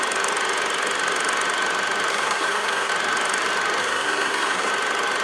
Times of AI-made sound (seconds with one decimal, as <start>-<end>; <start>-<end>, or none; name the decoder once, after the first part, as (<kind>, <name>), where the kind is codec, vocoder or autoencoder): 2.1-2.9 (codec, SNAC); 3.8-4.7

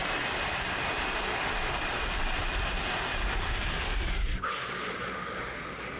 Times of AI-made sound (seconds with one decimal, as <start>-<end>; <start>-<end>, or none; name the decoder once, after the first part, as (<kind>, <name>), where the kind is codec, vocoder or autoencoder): none

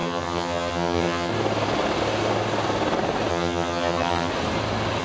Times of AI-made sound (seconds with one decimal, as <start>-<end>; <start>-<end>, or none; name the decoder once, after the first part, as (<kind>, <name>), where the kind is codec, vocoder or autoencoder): 0.0-1.3 (vocoder, HiFi-GAN); 3.3-4.3